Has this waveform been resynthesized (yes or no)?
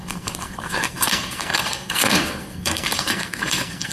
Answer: yes